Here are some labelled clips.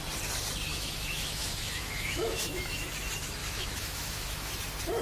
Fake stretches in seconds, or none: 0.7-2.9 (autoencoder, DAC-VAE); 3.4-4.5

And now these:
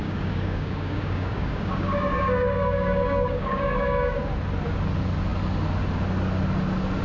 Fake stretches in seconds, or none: 0.0-4.2 (codec, DAC)

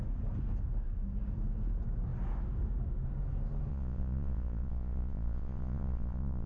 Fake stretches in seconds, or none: 3.7-6.5 (vocoder, Vocos)

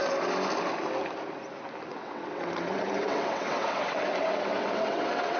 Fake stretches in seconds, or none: 1.9-5.4 (vocoder, WaveNeXt)